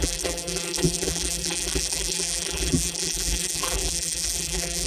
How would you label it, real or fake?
fake